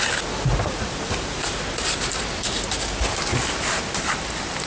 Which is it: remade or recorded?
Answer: recorded